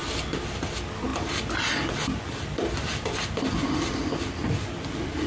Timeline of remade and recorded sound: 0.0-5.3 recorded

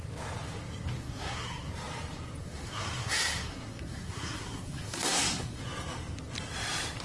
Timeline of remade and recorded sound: 0.0-1.0 recorded; 1.0-1.7 remade; 1.7-2.4 recorded; 2.4-5.6 remade; 5.6-7.0 recorded